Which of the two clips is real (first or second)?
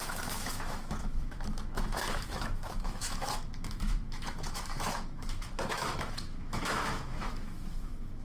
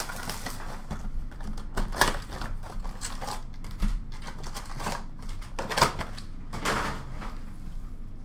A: second